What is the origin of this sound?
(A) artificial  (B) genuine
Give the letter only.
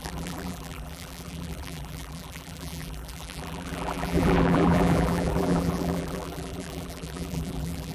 A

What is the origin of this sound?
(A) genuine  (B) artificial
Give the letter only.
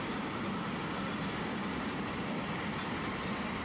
A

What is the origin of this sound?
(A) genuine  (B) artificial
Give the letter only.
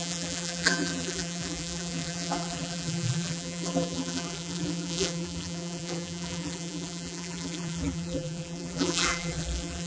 B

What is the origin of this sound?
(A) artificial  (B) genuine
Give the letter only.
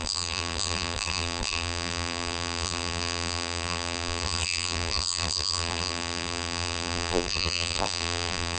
A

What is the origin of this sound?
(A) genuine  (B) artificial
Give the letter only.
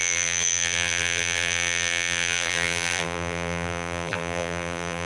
B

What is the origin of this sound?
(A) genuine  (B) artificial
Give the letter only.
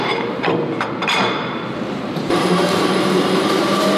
B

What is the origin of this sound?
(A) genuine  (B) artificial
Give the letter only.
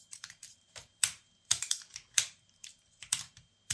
B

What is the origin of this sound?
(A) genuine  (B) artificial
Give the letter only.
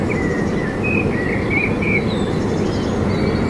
A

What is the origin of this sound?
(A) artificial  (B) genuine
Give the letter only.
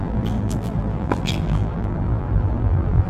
A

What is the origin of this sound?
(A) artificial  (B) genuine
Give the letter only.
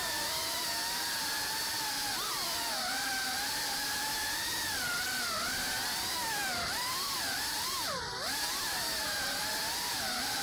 A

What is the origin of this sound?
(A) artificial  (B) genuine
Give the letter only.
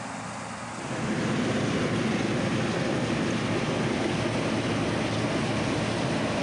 B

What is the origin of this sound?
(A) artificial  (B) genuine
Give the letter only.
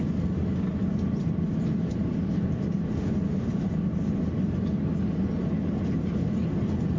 B